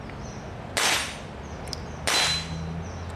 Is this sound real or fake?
real